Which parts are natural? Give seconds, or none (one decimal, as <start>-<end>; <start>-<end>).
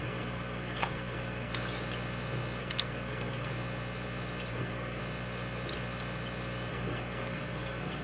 1.5-2.6; 3.5-4.5; 5.0-6.7